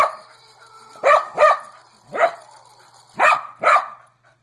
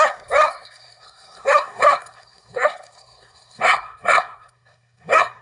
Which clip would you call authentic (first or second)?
first